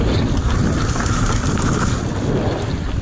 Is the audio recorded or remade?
recorded